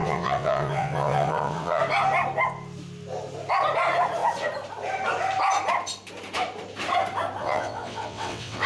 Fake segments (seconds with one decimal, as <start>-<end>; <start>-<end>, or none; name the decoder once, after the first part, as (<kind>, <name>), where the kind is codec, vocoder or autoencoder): 0.0-1.8 (vocoder, WaveNeXt); 7.4-8.7